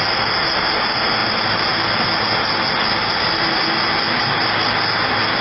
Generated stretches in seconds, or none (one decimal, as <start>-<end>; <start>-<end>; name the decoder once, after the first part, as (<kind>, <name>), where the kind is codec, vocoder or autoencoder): none